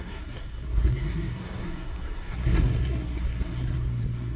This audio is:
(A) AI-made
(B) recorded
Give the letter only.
A